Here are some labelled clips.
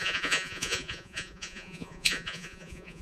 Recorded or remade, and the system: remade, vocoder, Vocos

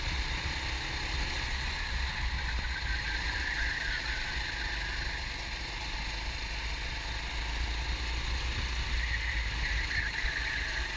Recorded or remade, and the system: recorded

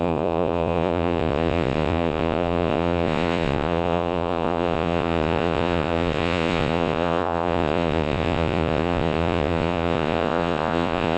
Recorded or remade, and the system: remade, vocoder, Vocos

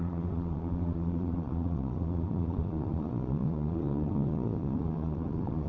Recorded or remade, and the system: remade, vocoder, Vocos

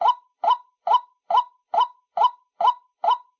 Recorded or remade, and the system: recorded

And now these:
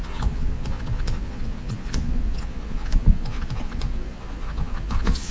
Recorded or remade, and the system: remade, vocoder, Vocos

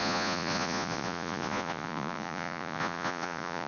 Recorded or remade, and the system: remade, vocoder, Vocos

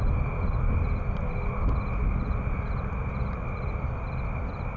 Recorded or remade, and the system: recorded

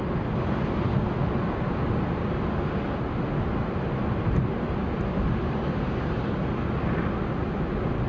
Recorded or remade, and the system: recorded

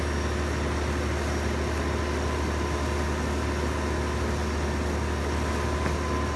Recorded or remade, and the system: recorded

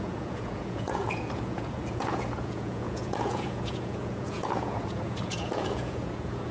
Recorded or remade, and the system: remade, vocoder, Vocos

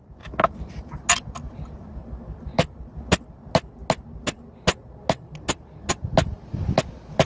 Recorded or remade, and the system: recorded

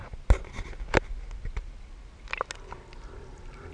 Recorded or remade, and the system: recorded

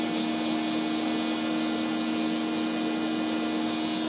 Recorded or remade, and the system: recorded